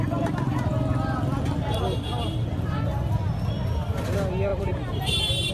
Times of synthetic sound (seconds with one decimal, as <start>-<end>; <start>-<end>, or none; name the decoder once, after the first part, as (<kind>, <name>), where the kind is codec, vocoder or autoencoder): 4.5-5.5 (vocoder, BigVGAN v2)